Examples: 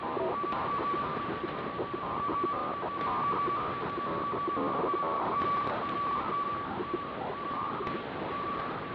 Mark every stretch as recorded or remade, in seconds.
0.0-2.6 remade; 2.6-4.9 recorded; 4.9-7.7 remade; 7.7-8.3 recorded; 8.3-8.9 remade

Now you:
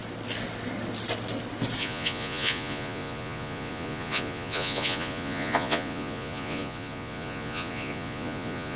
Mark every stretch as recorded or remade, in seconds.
0.0-1.8 recorded; 1.8-8.8 remade

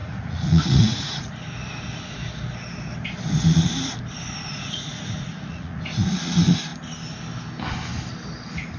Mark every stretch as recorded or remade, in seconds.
0.0-1.3 remade; 1.3-4.5 recorded; 4.5-5.8 remade; 5.8-8.8 recorded

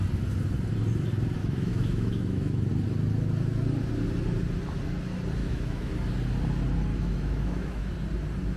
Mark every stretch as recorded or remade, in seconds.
0.0-1.4 recorded; 1.4-2.7 remade; 2.7-5.4 recorded; 5.4-5.9 remade; 5.9-6.9 recorded; 6.9-7.9 remade; 7.9-8.6 recorded

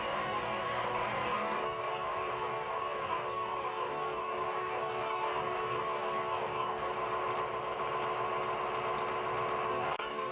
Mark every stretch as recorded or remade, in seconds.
0.0-6.9 remade; 6.9-9.7 recorded; 9.7-10.3 remade

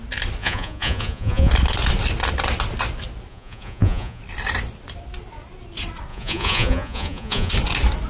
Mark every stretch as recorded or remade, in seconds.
0.0-0.4 recorded; 0.4-1.5 remade; 1.5-3.3 recorded; 3.3-4.2 remade; 4.2-6.1 recorded; 6.1-7.5 remade; 7.5-8.1 recorded